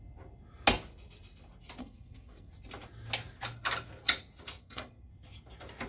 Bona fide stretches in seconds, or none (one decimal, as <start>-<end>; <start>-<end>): 0.0-1.8; 2.5-4.6; 5.1-5.9